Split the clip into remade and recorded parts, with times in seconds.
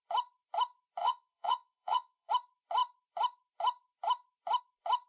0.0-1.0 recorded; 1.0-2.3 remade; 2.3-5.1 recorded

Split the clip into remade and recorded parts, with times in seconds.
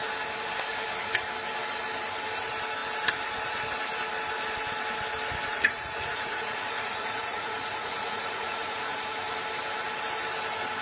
0.0-5.5 recorded; 5.5-9.0 remade; 9.0-10.8 recorded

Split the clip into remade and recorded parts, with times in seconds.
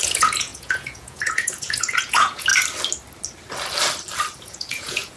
0.0-2.5 remade; 2.5-4.4 recorded; 4.4-5.2 remade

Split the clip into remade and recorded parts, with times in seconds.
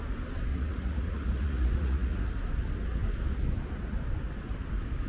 0.0-0.5 recorded; 0.5-2.3 remade; 2.3-5.1 recorded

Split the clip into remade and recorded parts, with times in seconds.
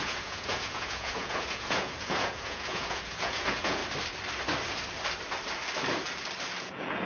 0.0-3.8 remade; 3.8-6.6 recorded; 6.6-7.1 remade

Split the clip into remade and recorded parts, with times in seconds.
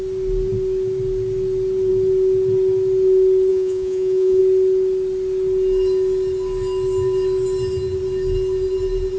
0.0-3.5 recorded; 3.5-4.4 remade; 4.4-9.2 recorded